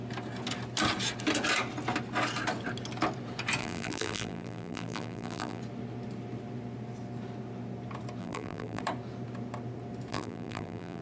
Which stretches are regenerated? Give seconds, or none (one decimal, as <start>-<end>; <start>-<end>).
3.6-5.6; 8.2-8.8; 10.1-11.0